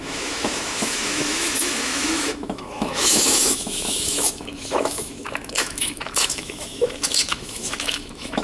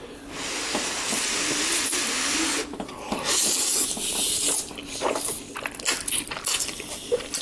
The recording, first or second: second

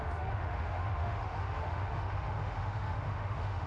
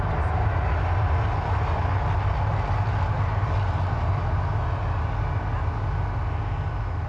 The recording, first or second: second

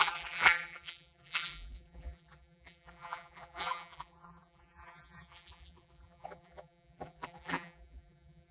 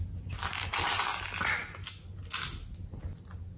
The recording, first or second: second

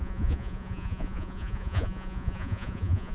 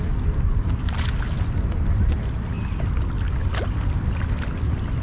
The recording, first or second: second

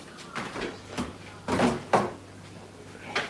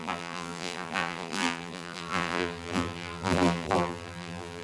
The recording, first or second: first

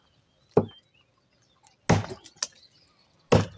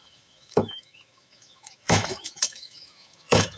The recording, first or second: first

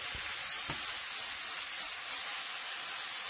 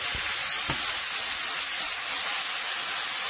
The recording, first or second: second